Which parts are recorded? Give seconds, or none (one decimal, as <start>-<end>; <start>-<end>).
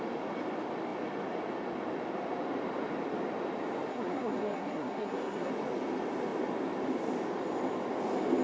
0.0-3.9; 5.5-8.4